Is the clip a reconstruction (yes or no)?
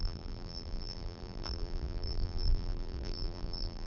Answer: yes